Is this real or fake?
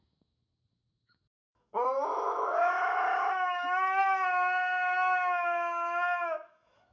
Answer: fake